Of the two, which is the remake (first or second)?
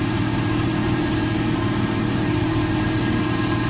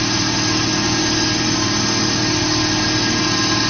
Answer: first